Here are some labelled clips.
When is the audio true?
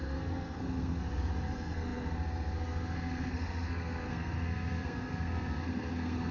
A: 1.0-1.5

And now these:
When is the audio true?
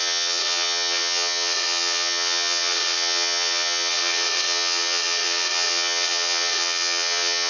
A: none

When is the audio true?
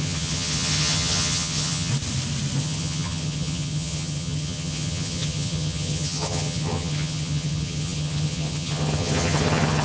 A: 1.9-2.6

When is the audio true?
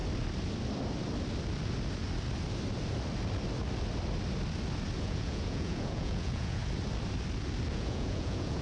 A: 0.0-5.0; 6.6-7.7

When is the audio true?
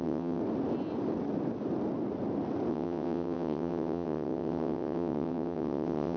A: 0.4-2.7